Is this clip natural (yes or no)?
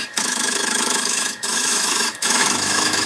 no